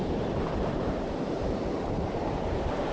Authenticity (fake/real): fake